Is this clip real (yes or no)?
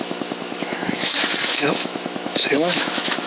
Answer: no